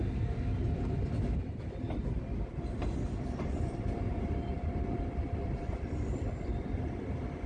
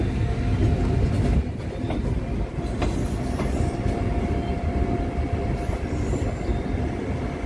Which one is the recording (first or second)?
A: second